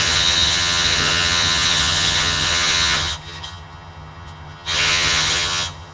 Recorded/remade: remade